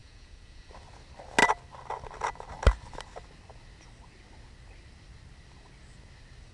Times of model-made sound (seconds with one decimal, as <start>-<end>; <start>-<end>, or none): 0.0-0.7